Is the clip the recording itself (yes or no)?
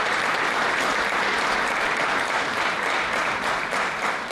no